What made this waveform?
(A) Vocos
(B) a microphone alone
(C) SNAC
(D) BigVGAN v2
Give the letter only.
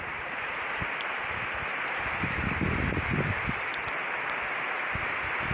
B